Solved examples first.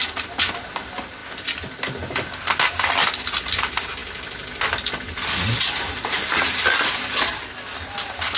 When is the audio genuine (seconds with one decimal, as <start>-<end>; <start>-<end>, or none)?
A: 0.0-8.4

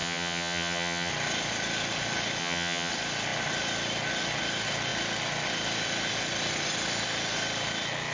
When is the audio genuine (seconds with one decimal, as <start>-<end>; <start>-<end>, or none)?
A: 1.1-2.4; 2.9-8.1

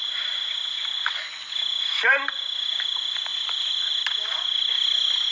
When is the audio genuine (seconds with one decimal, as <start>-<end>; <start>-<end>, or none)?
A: 0.0-5.3